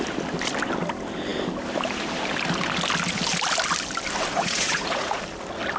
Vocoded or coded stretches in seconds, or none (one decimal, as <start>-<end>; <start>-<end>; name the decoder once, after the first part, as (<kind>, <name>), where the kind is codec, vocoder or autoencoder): 4.3-5.2 (vocoder, Vocos)